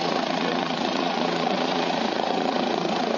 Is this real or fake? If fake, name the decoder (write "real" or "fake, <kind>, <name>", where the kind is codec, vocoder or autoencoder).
fake, vocoder, Vocos